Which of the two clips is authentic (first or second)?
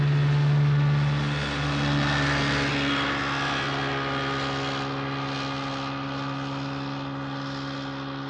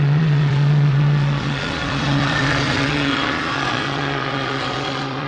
first